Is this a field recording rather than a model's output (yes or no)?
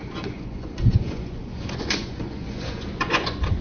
no